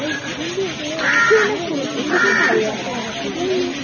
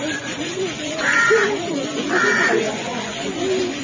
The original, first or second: first